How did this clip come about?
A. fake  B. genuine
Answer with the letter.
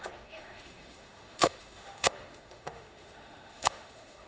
A